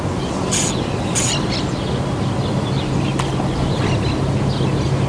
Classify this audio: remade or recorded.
recorded